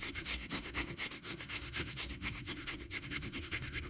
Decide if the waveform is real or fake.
fake